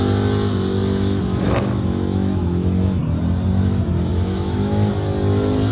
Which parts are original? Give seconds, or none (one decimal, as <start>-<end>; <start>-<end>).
0.0-0.8; 3.0-4.1; 4.9-5.7